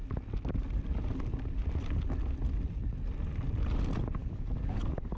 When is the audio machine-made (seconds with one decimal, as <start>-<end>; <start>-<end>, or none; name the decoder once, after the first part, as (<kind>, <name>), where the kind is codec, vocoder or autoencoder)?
4.2-5.2 (codec, DAC)